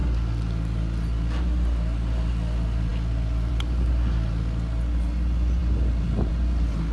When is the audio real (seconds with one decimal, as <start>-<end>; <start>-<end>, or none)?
0.0-6.9